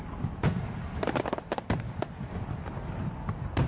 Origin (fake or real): real